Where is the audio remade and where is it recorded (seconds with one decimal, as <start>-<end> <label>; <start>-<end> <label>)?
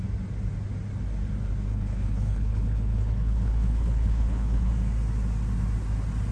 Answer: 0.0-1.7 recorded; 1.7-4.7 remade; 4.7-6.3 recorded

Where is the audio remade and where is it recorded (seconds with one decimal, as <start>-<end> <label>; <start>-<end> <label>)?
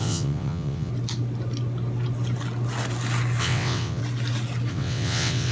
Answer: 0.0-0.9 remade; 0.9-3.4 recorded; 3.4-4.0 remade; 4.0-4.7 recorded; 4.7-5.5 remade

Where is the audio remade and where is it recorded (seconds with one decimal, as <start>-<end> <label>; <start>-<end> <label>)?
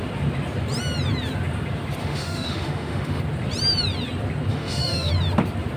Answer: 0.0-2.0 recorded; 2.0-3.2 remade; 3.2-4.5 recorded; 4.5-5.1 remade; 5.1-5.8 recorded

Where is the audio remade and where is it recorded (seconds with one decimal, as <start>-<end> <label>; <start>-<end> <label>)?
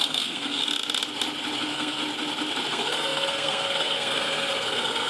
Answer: 0.0-0.6 remade; 0.6-1.6 recorded; 1.6-2.0 remade; 2.0-2.7 recorded; 2.7-5.1 remade